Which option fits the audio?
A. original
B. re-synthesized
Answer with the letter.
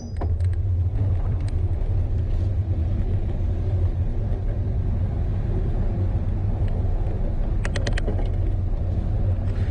A